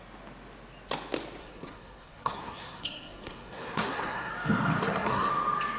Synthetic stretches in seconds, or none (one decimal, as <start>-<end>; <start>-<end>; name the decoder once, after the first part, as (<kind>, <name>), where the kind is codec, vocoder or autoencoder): 1.4-4.3 (codec, SNAC); 4.8-5.3